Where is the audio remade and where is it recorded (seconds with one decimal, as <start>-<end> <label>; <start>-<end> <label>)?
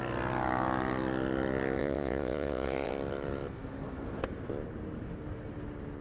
0.0-1.8 recorded; 1.8-2.9 remade; 2.9-6.0 recorded